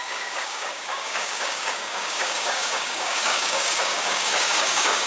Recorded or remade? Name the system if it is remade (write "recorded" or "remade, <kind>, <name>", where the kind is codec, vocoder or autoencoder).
remade, codec, DAC